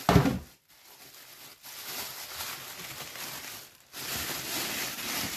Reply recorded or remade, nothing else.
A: recorded